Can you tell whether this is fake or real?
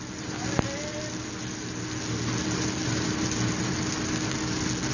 real